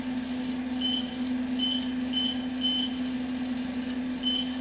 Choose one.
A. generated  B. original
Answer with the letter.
B